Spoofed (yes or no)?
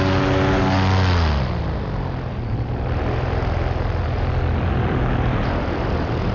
no